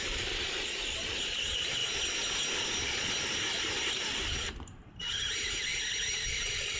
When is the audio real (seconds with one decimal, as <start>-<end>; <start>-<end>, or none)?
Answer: 1.8-3.9